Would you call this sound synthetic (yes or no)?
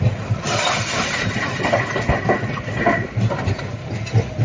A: no